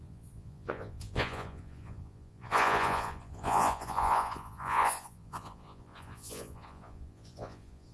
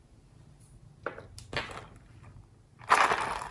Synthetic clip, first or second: first